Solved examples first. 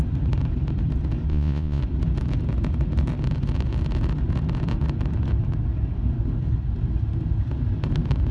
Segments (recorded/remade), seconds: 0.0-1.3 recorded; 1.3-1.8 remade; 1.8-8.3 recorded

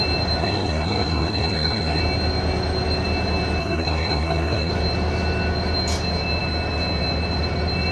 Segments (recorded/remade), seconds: 0.0-0.4 recorded; 0.4-2.0 remade; 2.0-3.6 recorded; 3.6-4.7 remade; 4.7-7.9 recorded